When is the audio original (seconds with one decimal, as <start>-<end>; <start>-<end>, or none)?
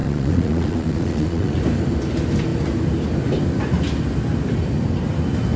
1.6-5.6